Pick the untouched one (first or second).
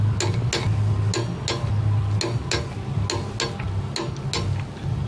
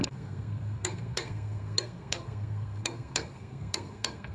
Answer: first